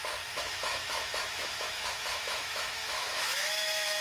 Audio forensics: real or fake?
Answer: fake